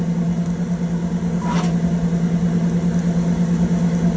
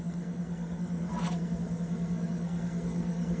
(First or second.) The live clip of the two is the first